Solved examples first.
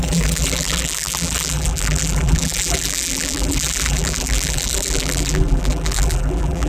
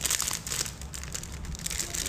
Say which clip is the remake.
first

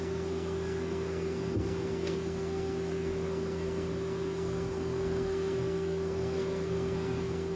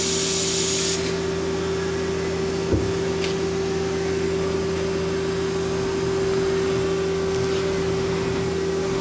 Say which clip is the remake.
first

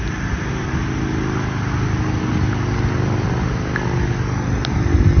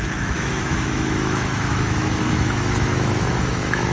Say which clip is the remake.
second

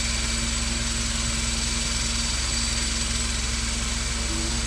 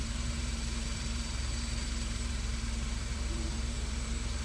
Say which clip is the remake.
second